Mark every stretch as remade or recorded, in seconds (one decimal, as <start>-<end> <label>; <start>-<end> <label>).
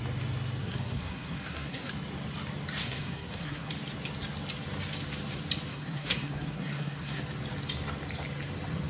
0.0-0.6 recorded; 0.6-1.9 remade; 1.9-2.8 recorded; 2.8-3.7 remade; 3.7-5.7 recorded; 5.7-7.2 remade; 7.2-8.9 recorded